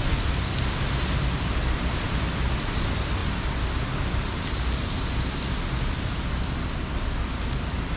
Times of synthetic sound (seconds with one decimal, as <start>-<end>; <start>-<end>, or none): 0.0-3.2; 5.8-8.0